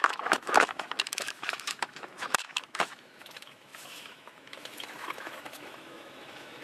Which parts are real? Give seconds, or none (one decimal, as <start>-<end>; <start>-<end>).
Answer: none